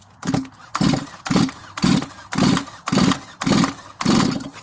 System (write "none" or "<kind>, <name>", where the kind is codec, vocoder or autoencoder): none